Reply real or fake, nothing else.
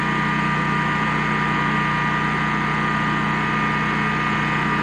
real